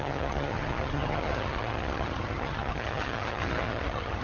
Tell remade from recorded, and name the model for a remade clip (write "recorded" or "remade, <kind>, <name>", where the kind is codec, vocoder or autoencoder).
remade, vocoder, HiFi-GAN